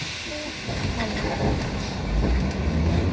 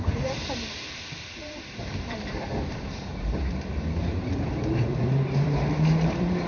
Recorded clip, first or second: first